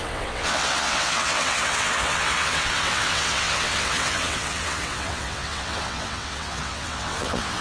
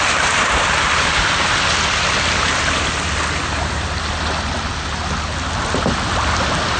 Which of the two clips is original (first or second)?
second